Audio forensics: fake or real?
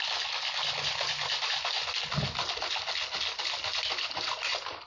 real